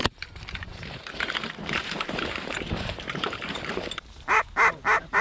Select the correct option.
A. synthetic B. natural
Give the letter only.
A